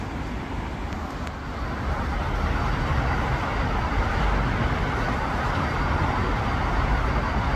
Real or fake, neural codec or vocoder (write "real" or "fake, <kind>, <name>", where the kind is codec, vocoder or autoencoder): real